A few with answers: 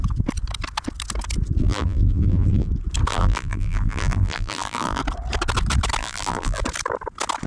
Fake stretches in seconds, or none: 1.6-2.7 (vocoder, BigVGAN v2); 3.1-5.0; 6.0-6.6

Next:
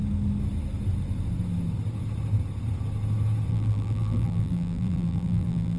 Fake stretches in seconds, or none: 3.5-5.8 (vocoder, BigVGAN v2)

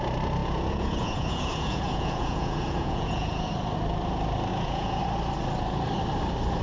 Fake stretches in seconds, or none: 0.4-3.5 (vocoder, Vocos); 4.5-5.0

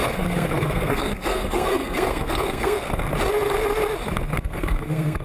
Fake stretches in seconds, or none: 0.0-3.1 (codec, SNAC); 4.4-5.2

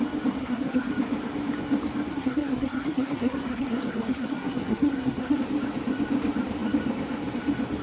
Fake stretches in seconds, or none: 0.4-0.9 (codec, SNAC); 2.1-5.4

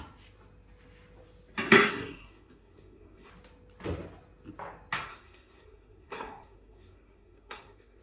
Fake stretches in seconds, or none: 1.9-3.3 (codec, SNAC); 5.1-8.0

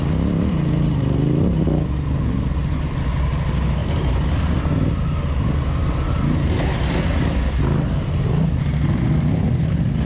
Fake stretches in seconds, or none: 3.8-4.4 (vocoder, BigVGAN v2)

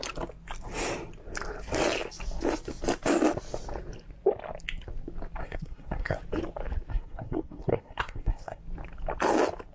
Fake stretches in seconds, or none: 5.4-6.2 (codec, SNAC); 6.9-8.6